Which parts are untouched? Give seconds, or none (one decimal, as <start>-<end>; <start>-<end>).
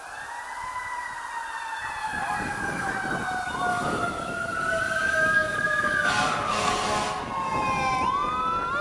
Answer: 0.0-2.0; 2.9-3.7; 7.2-8.8